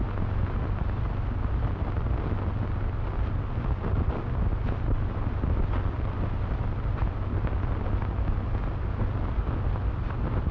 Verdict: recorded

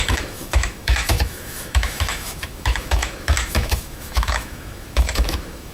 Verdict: remade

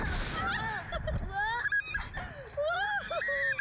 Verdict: recorded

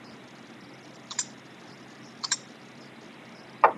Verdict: remade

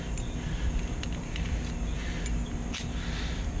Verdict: recorded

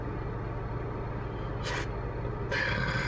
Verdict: recorded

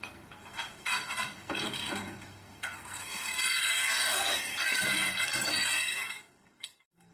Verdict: remade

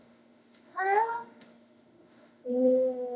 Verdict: remade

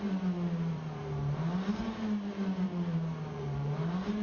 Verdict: remade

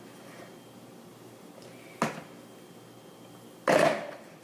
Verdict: recorded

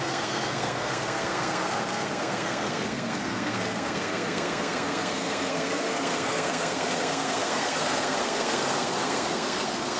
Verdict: remade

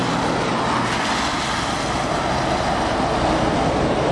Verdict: recorded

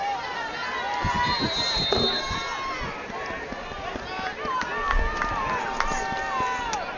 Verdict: recorded